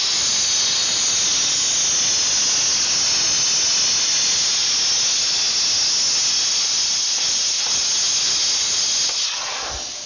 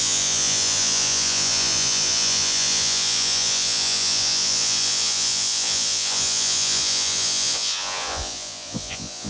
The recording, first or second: first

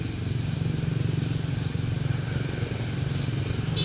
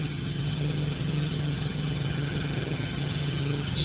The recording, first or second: first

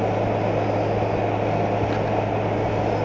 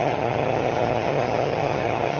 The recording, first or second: first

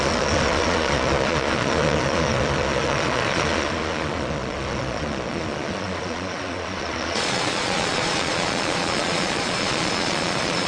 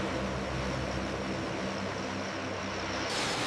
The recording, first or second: second